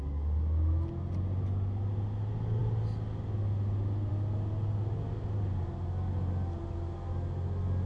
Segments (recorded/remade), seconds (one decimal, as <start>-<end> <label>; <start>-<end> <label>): 0.0-7.9 recorded

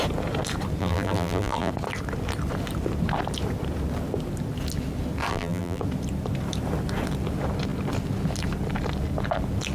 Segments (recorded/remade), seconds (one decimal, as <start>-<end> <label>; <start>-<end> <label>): 0.0-0.8 recorded; 0.8-1.7 remade; 1.7-5.3 recorded; 5.3-5.8 remade; 5.8-9.7 recorded

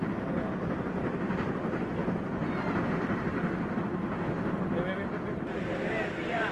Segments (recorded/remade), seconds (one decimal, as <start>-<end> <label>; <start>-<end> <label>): 0.0-6.5 recorded

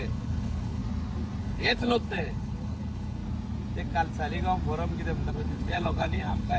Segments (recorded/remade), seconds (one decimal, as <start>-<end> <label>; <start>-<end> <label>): 0.0-0.8 remade; 0.8-1.4 recorded; 1.4-3.2 remade; 3.2-5.3 recorded; 5.3-6.6 remade